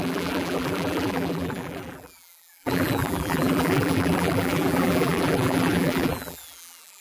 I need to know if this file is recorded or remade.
remade